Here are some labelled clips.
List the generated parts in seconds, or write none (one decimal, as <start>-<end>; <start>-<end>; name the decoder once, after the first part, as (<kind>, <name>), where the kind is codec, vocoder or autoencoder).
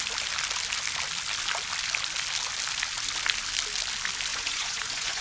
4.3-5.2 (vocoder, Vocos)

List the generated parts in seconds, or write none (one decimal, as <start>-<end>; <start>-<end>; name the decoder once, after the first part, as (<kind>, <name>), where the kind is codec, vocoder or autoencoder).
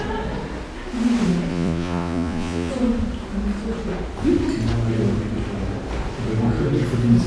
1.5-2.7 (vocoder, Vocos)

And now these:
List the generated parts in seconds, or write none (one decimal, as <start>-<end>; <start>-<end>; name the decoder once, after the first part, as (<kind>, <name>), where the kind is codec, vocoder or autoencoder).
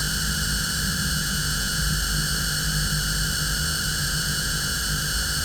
1.2-1.8 (vocoder, Vocos); 3.9-4.8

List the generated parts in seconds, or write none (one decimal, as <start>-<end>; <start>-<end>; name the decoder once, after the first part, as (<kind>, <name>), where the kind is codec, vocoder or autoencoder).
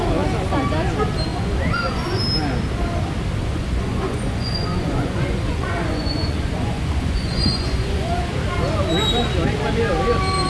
1.3-2.2 (vocoder, Vocos); 3.4-8.3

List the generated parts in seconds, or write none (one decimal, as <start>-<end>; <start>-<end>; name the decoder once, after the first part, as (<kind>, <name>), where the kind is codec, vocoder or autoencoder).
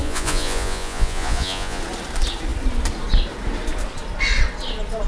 0.0-1.8 (vocoder, Vocos)